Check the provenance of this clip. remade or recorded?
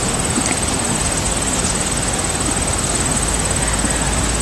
recorded